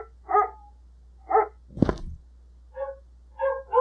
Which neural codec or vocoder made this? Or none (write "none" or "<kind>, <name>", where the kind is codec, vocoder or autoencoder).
none